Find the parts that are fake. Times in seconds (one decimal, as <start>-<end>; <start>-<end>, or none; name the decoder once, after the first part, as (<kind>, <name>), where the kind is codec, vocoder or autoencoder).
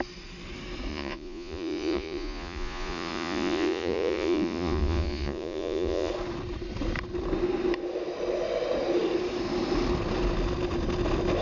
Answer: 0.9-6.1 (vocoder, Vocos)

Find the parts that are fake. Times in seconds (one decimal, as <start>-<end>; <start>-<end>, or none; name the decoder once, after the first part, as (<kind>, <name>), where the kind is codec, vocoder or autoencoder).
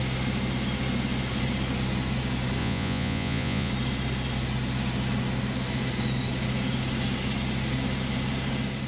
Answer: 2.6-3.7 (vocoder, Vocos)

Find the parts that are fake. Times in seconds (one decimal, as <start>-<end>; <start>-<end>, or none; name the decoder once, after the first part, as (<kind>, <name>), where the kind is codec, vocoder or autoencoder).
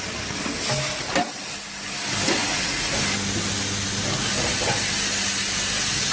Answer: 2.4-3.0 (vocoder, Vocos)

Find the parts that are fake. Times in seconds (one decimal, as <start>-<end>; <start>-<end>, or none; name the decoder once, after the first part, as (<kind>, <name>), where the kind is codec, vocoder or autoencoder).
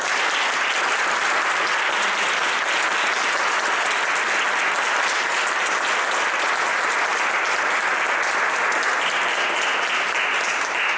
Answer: none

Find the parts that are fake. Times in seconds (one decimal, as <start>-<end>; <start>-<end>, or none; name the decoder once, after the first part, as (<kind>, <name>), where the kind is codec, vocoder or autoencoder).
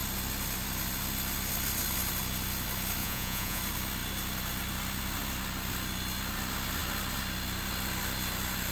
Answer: 3.0-3.6 (vocoder, Vocos)